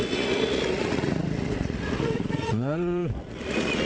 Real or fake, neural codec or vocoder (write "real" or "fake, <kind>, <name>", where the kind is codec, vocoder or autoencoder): fake, vocoder, Vocos